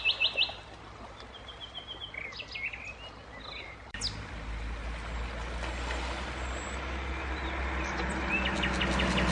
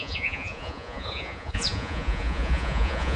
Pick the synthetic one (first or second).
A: second